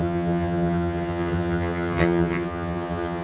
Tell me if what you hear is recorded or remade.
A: remade